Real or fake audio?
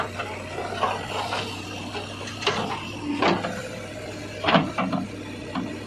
real